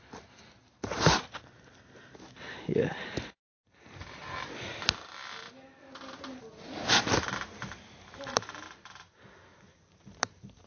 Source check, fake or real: real